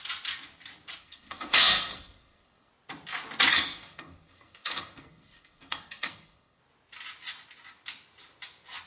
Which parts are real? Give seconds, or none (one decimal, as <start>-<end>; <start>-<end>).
0.0-1.0; 2.7-3.5; 6.6-8.9